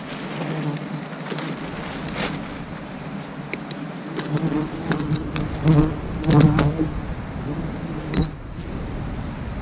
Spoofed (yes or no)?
no